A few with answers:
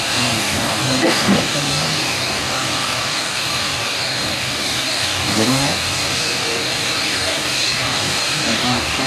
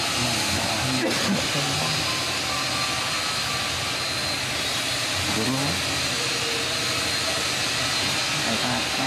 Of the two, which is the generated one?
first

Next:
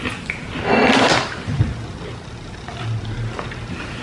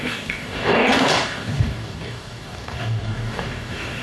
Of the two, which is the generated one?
second